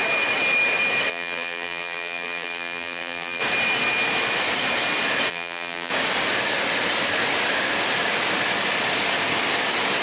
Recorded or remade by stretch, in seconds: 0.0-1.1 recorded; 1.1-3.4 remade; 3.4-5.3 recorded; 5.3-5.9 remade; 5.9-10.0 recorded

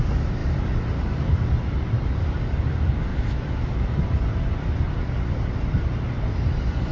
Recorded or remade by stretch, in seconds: 0.0-3.1 recorded; 3.1-4.0 remade; 4.0-6.9 recorded

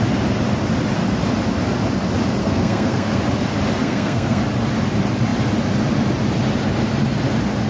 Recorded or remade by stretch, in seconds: 0.0-2.4 recorded; 2.4-3.2 remade; 3.2-3.8 recorded; 3.8-4.4 remade; 4.4-7.7 recorded

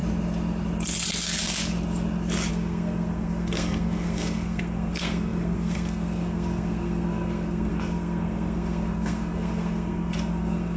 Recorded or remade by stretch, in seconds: 0.0-2.5 recorded; 2.5-10.8 remade